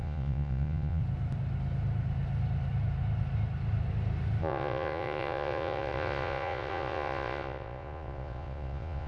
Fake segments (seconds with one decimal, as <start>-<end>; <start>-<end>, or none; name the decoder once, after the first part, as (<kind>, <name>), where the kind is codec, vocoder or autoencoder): 0.0-1.0 (vocoder, Vocos); 4.4-9.1